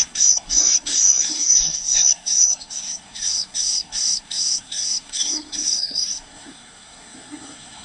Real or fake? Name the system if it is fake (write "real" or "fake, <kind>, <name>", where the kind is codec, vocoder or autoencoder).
fake, codec, SNAC